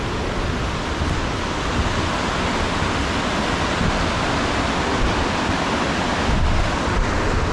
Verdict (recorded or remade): recorded